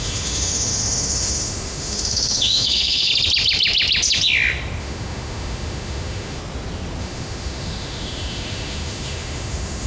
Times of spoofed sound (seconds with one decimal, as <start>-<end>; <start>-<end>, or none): 0.0-3.1; 4.8-6.4; 7.0-9.9